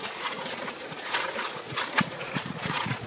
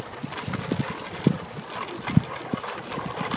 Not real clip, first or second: first